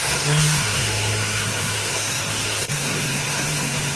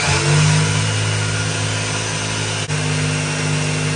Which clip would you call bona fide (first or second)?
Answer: second